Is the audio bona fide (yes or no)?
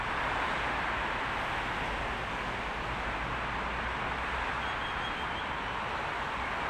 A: yes